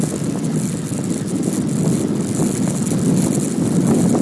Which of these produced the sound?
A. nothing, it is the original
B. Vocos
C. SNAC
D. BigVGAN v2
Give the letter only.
A